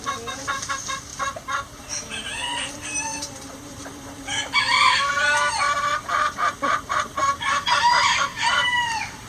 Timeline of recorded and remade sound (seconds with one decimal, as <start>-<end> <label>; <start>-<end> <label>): 0.0-1.1 recorded; 1.1-2.7 remade; 2.7-3.1 recorded; 3.1-5.2 remade; 5.2-5.9 recorded; 5.9-9.3 remade

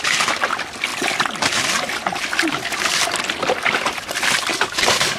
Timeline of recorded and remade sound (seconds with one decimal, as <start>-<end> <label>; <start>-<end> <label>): 0.0-4.5 recorded; 4.5-5.2 remade

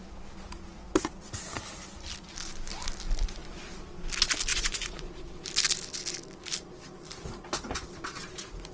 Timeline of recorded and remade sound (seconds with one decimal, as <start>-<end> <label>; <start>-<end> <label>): 0.0-4.5 recorded; 4.5-5.1 remade; 5.1-8.7 recorded

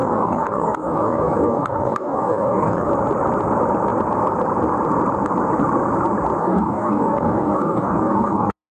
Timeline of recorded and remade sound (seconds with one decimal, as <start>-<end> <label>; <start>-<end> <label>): 0.0-2.9 remade; 2.9-6.4 recorded; 6.4-8.7 remade

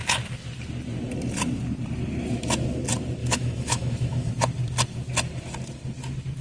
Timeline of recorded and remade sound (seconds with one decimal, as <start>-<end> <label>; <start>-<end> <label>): 0.0-3.2 recorded; 3.2-4.3 remade; 4.3-6.4 recorded